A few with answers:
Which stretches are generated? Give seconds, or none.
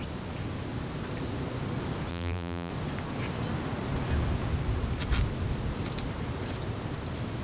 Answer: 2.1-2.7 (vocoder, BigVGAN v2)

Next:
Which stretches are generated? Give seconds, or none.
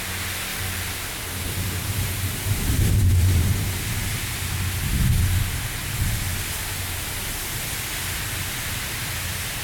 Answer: 0.5-3.7 (vocoder, BigVGAN v2)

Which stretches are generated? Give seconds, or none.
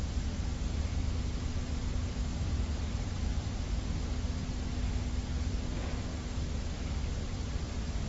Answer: 2.3-3.6 (vocoder, BigVGAN v2)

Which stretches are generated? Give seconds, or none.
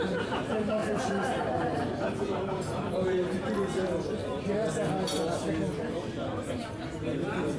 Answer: 0.0-4.2 (vocoder, BigVGAN v2); 6.5-7.6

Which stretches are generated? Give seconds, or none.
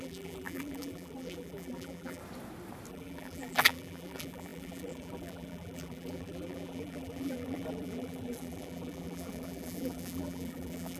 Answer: 0.0-2.2 (vocoder, BigVGAN v2); 2.9-11.0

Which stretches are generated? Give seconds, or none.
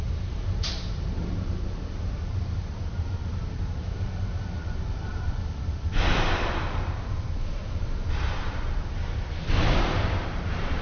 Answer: 0.0-10.8 (vocoder, BigVGAN v2)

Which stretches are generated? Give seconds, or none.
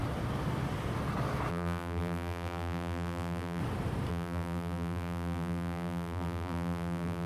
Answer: 1.5-3.6 (vocoder, BigVGAN v2); 4.1-7.3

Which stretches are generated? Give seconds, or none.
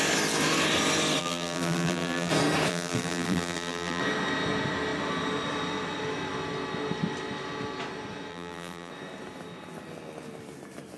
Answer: 1.2-2.3 (vocoder, BigVGAN v2); 2.7-4.0; 8.3-8.9